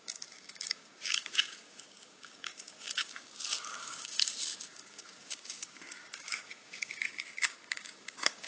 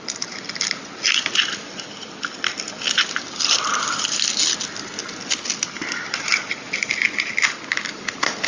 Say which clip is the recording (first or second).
second